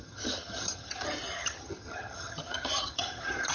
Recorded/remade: remade